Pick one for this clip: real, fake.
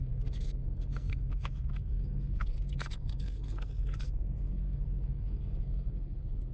fake